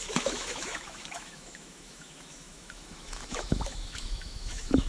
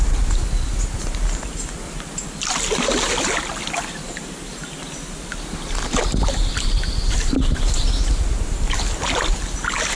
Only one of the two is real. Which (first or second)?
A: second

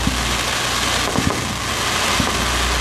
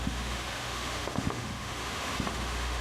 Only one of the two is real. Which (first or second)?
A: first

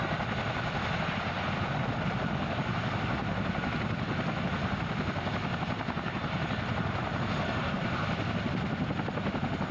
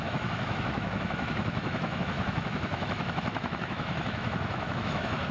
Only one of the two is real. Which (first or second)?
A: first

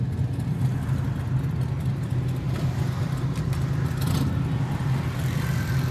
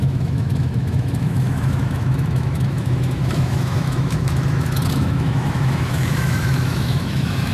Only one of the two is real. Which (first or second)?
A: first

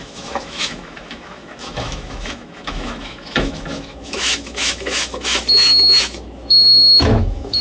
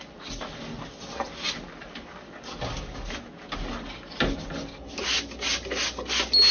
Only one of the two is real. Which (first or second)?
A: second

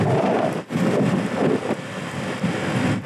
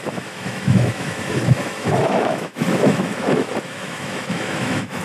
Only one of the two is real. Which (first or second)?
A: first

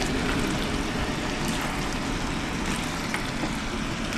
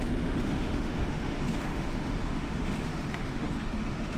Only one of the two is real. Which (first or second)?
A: first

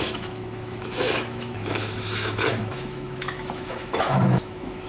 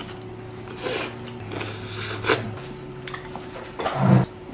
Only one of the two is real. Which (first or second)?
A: second